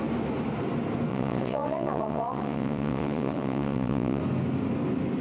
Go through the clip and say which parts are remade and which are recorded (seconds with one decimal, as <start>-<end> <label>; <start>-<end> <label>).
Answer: 0.0-1.1 recorded; 1.1-4.2 remade; 4.2-5.2 recorded